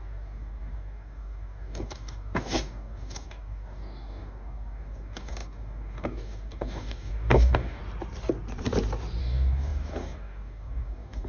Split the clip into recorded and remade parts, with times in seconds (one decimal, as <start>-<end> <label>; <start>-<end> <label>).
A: 0.0-7.8 remade; 7.8-9.2 recorded; 9.2-11.3 remade

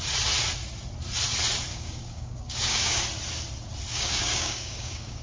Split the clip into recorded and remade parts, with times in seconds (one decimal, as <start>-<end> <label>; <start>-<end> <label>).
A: 0.0-1.7 recorded; 1.7-3.0 remade; 3.0-3.9 recorded; 3.9-5.2 remade

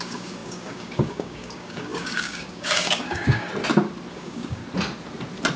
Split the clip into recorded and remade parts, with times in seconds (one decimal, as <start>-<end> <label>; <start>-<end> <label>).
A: 0.0-3.5 remade; 3.5-4.1 recorded; 4.1-4.6 remade; 4.6-5.6 recorded

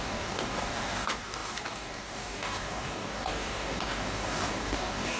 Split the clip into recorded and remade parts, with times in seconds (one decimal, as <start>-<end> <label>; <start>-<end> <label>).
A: 0.0-5.2 remade